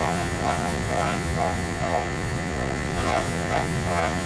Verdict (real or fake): fake